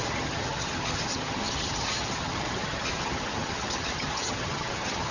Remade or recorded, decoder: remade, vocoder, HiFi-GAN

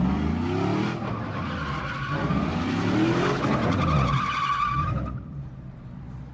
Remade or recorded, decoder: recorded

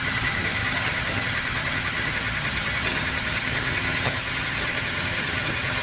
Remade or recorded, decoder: remade, vocoder, HiFi-GAN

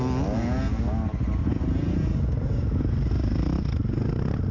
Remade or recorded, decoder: recorded